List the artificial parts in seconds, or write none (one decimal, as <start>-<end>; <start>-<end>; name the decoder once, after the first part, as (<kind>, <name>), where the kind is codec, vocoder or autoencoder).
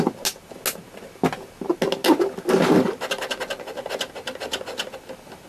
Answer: none